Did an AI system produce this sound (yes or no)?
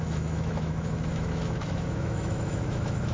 yes